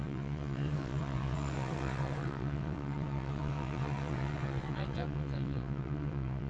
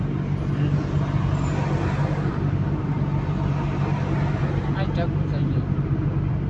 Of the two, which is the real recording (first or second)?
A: second